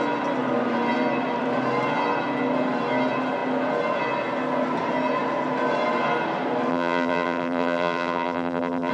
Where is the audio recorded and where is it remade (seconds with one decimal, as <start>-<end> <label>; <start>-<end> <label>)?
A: 0.0-6.7 recorded; 6.7-8.9 remade